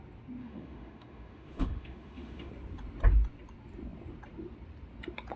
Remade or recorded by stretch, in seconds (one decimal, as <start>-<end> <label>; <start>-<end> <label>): 0.0-0.4 recorded; 0.4-2.5 remade; 2.5-5.4 recorded